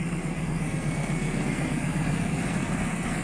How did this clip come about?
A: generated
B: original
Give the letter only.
A